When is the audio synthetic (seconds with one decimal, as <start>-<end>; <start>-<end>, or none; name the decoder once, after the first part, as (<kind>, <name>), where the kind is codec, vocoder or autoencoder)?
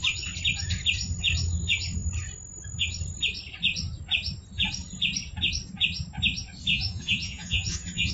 6.7-8.1 (vocoder, Vocos)